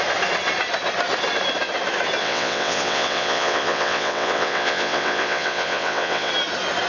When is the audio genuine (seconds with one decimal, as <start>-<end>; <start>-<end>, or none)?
0.0-2.2; 6.3-6.9